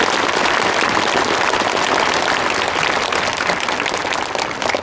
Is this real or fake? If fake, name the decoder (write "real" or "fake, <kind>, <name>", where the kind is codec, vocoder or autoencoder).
real